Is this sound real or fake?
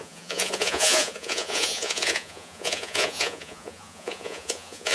fake